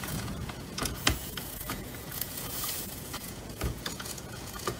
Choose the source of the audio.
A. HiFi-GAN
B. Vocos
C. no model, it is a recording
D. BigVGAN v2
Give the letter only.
B